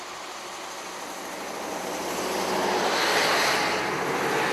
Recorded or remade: recorded